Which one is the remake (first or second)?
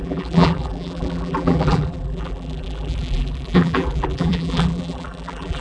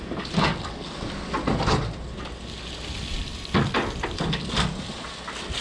first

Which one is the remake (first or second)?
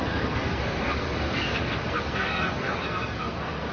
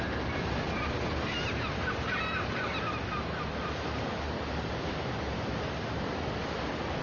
first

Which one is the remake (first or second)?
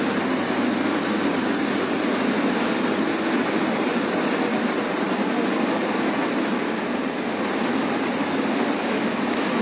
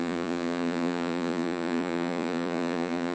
second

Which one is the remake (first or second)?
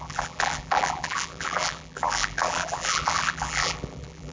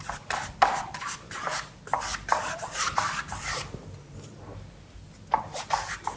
first